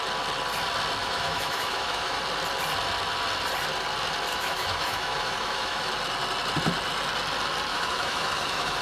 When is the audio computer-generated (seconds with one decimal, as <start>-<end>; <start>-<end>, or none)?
1.0-2.2; 4.3-5.9; 7.7-8.8